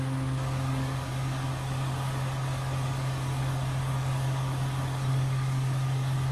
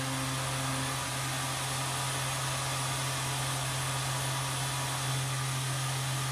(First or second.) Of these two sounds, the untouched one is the second